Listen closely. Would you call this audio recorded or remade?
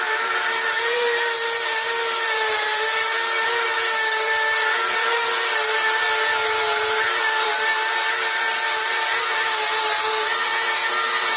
remade